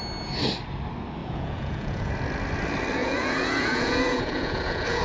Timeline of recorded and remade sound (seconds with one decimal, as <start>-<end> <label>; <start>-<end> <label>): 0.0-1.2 recorded; 1.2-2.1 remade; 2.1-3.0 recorded; 3.0-5.0 remade